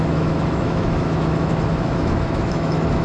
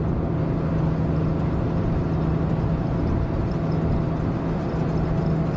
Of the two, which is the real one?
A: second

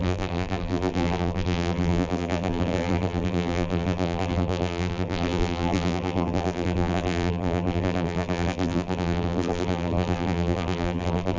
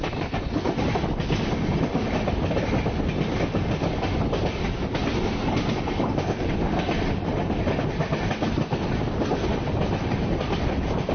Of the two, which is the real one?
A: second